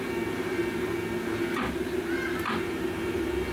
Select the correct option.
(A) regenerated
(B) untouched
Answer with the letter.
B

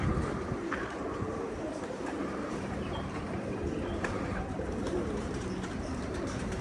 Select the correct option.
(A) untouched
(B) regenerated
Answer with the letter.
B